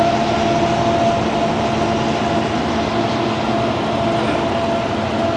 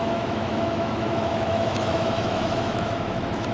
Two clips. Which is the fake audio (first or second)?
second